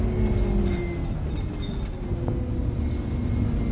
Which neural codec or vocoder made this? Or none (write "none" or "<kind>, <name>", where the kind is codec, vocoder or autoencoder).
none